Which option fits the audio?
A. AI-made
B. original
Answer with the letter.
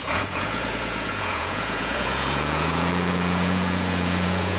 A